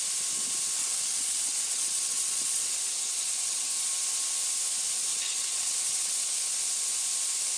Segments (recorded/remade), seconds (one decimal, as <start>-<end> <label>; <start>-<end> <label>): 0.0-0.8 recorded; 0.8-3.7 remade; 3.7-5.1 recorded; 5.1-6.3 remade; 6.3-7.6 recorded